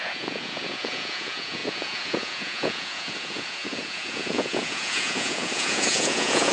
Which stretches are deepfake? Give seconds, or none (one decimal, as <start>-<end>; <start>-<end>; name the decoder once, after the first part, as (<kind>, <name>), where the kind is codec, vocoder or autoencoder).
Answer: 0.0-6.5 (vocoder, Vocos)